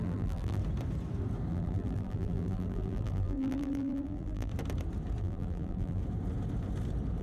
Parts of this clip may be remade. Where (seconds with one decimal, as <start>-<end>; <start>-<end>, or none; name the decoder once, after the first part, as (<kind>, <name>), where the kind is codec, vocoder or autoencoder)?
0.0-0.6 (vocoder, BigVGAN v2); 1.5-4.5; 5.2-6.0